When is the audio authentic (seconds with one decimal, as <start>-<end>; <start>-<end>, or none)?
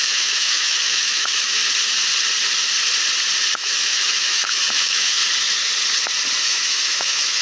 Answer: 1.6-3.5; 5.2-6.4